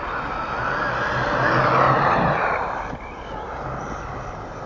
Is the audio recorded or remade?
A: recorded